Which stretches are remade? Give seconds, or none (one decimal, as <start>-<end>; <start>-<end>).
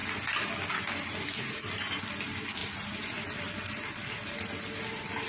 2.6-3.4